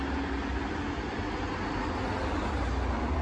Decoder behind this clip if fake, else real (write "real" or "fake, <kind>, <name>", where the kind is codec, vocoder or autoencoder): real